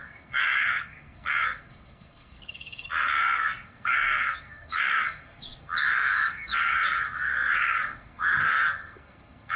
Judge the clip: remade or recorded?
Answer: remade